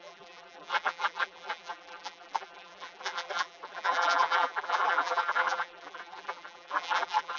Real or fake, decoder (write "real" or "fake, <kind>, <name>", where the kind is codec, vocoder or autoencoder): fake, vocoder, BigVGAN v2